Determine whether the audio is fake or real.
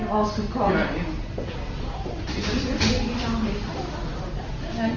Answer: real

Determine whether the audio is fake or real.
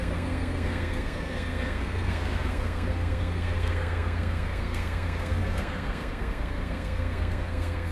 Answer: fake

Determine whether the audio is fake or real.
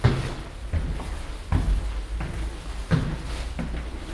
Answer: real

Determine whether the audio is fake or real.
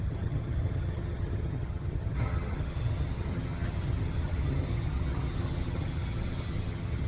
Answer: fake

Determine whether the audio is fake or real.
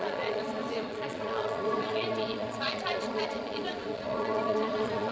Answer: fake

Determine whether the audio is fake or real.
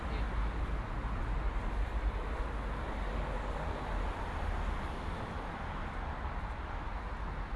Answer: real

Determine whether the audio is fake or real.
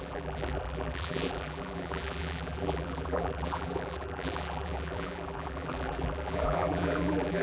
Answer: fake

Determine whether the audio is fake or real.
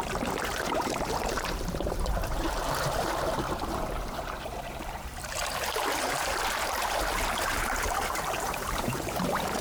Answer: fake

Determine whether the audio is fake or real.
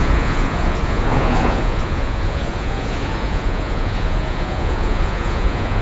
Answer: fake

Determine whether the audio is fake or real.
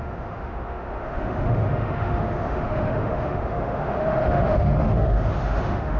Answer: fake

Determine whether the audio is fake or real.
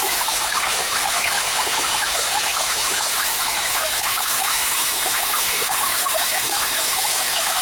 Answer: fake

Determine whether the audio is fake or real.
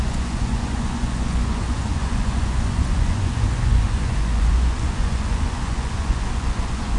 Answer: fake